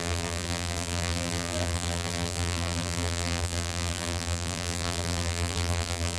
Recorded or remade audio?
remade